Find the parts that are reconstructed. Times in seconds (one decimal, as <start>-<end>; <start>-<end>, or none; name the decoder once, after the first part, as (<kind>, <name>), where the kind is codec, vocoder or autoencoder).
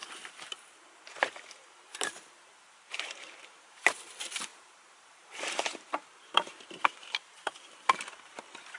0.0-4.1 (vocoder, BigVGAN v2); 4.5-7.7